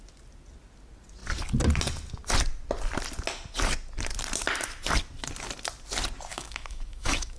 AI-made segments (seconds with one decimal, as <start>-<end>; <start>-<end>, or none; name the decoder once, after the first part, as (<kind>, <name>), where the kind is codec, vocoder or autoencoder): 6.3-7.4 (autoencoder, DAC-VAE)